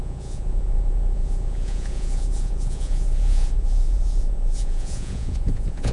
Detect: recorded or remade remade